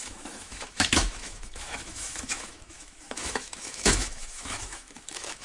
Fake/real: fake